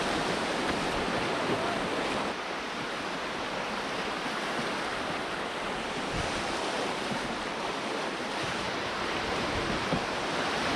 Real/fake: fake